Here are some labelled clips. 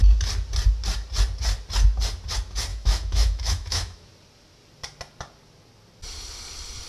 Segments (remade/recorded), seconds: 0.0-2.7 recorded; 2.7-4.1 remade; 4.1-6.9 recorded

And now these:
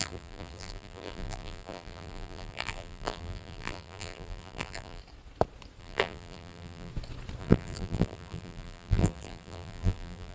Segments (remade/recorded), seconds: 0.0-5.0 remade; 5.0-5.8 recorded; 5.8-6.9 remade; 6.9-7.4 recorded; 7.4-10.3 remade

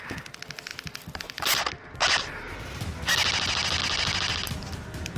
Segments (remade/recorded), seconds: 0.0-5.2 recorded

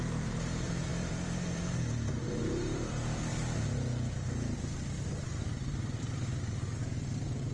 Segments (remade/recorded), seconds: 0.0-3.3 remade; 3.3-5.4 recorded; 5.4-7.5 remade